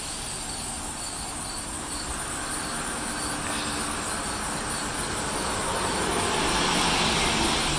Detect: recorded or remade recorded